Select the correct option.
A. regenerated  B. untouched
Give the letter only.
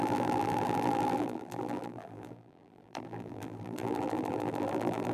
A